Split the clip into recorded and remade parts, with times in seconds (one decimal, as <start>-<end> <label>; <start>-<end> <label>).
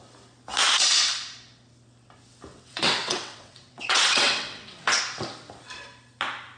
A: 0.0-2.5 recorded; 2.5-5.0 remade; 5.0-6.6 recorded